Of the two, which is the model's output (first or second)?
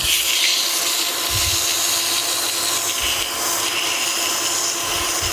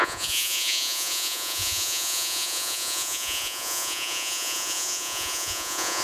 second